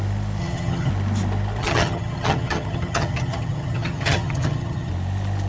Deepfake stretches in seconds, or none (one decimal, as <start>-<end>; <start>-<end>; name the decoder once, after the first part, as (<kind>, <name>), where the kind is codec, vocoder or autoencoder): 0.4-0.9 (vocoder, HiFi-GAN); 1.6-4.9